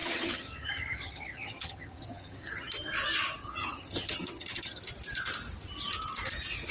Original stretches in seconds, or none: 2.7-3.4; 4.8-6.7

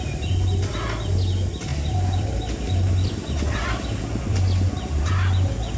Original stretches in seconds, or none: 0.0-1.7; 5.0-5.8